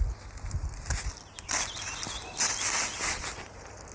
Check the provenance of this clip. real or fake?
real